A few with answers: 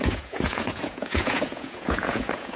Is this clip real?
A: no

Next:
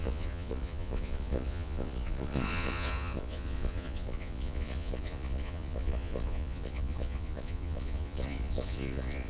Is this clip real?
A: no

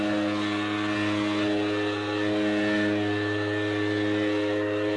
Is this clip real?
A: yes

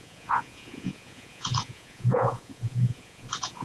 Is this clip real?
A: no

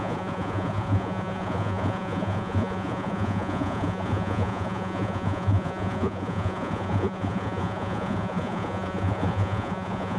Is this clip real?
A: no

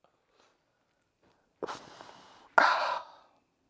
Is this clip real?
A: yes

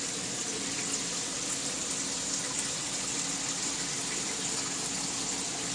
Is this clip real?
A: yes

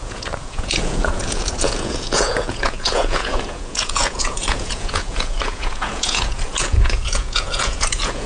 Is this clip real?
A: no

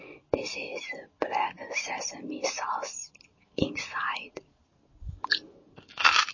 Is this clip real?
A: yes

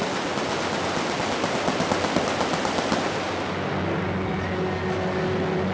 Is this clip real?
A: yes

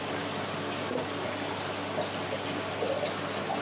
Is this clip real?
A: yes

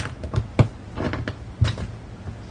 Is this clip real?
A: yes